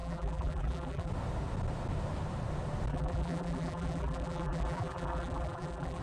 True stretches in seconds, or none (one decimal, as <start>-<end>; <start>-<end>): 1.1-2.9